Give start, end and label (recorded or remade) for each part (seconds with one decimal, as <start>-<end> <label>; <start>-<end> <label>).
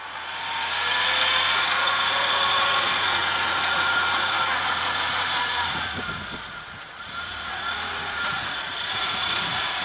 0.0-9.8 remade